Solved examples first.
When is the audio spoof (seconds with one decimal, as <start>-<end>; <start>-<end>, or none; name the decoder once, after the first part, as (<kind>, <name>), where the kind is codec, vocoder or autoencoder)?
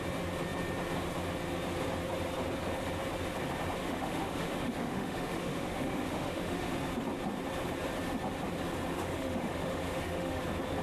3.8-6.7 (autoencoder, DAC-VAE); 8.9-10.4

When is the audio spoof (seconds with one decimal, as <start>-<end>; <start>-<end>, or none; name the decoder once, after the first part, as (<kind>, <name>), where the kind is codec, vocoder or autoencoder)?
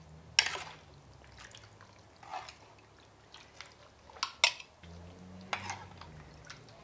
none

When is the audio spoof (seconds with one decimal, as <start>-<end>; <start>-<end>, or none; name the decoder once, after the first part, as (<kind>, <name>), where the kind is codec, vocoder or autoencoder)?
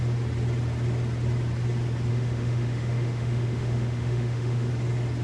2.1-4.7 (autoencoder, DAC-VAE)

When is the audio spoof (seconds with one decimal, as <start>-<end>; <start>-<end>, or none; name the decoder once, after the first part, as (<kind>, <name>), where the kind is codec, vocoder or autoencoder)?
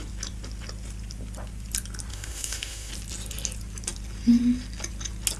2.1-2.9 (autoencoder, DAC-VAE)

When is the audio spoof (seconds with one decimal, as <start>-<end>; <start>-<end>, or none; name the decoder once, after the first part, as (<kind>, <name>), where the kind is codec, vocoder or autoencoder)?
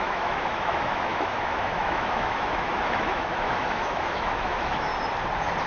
0.0-4.9 (autoencoder, DAC-VAE)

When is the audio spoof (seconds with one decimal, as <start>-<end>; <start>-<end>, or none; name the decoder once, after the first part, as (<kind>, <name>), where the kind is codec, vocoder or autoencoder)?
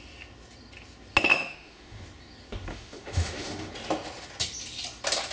1.3-2.0 (autoencoder, DAC-VAE); 2.7-3.7